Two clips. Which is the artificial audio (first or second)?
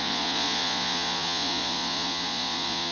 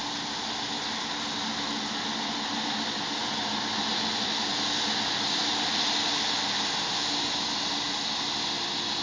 first